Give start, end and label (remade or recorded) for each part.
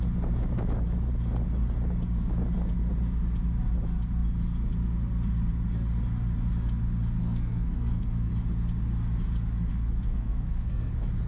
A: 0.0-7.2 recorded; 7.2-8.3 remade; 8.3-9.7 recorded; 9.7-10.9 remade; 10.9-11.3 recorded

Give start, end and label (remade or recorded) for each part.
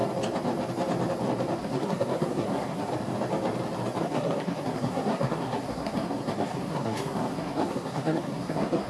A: 0.0-1.6 recorded; 1.6-2.9 remade; 2.9-4.0 recorded; 4.0-8.9 remade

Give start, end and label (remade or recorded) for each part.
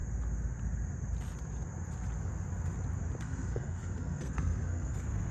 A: 0.0-3.2 recorded; 3.2-5.3 remade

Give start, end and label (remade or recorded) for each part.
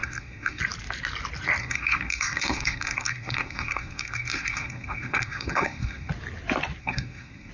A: 0.0-0.6 remade; 0.6-1.6 recorded; 1.6-6.1 remade; 6.1-6.8 recorded; 6.8-7.5 remade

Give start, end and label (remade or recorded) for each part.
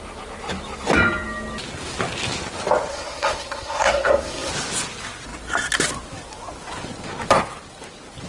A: 0.0-2.9 recorded; 2.9-4.5 remade; 4.5-8.3 recorded